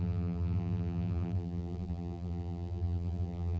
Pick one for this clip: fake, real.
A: fake